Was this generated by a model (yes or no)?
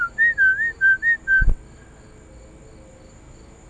no